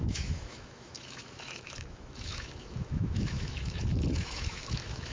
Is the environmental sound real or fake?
fake